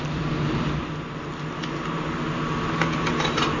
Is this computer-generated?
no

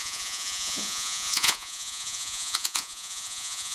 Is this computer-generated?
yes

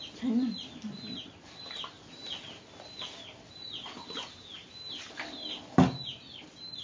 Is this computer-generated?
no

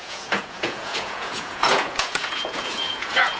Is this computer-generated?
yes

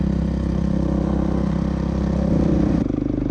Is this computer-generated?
no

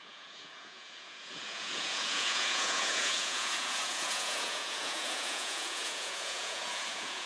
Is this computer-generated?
yes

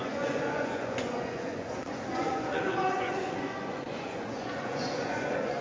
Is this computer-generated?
yes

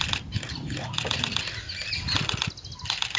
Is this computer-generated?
no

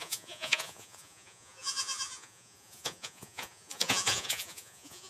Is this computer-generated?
yes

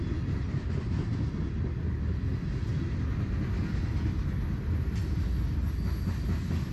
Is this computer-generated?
no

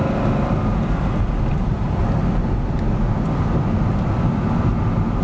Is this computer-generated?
no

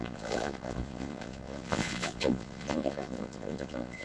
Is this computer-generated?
yes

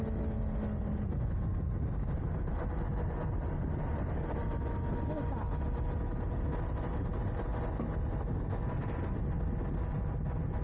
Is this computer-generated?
no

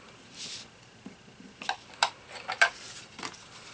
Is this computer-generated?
no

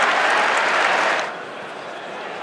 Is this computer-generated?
no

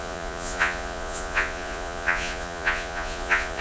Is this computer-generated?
yes